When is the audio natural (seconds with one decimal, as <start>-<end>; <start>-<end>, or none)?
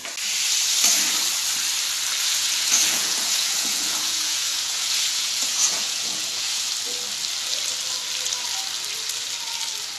0.0-2.2; 6.7-10.0